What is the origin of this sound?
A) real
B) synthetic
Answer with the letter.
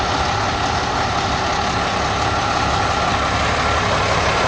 A